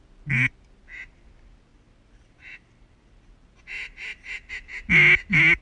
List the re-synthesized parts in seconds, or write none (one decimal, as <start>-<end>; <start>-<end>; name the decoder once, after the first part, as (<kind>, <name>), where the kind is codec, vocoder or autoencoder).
1.7-4.5 (vocoder, BigVGAN v2)